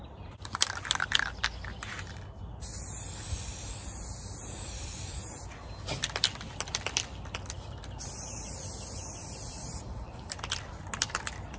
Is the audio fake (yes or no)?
no